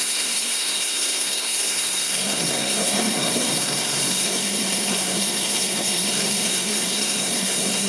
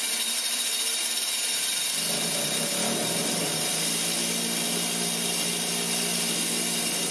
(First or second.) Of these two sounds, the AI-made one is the first